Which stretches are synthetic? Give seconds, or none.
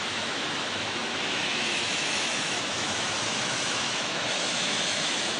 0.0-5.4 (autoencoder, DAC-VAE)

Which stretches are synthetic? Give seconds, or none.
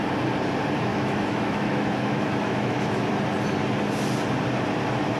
0.9-3.1 (autoencoder, DAC-VAE)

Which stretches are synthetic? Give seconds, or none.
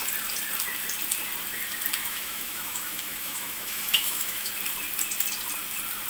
2.0-4.5 (autoencoder, DAC-VAE)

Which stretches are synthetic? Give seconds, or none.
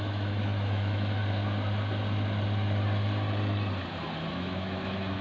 0.0-1.2 (autoencoder, DAC-VAE); 4.3-5.2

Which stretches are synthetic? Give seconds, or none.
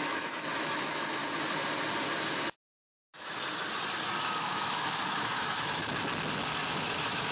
0.0-1.2 (autoencoder, DAC-VAE); 4.4-5.8; 6.8-7.3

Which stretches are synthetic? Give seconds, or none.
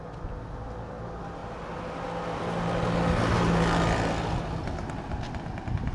none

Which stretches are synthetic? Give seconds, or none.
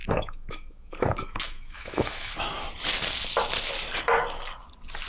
0.0-2.3 (autoencoder, DAC-VAE)